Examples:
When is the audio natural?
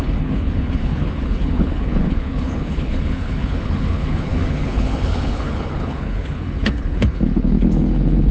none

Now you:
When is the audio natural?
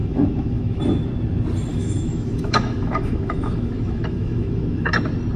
0.8-1.7; 4.9-5.4